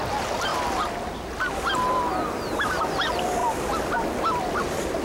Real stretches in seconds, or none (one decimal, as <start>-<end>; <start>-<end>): 0.0-5.0